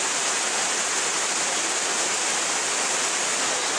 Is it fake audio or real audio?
real